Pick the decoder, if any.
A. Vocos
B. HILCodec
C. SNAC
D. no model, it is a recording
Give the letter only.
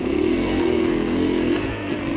C